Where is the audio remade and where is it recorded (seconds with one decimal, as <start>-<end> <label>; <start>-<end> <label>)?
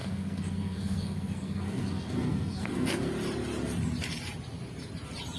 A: 0.0-3.1 remade; 3.1-5.4 recorded